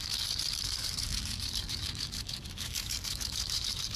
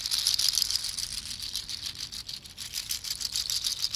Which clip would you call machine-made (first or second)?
first